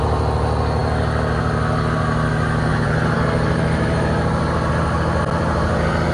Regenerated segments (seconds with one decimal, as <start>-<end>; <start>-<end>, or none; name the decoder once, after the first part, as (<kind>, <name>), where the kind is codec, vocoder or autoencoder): 2.7-4.7 (vocoder, BigVGAN v2)